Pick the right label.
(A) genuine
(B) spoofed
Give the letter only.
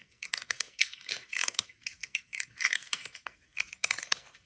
B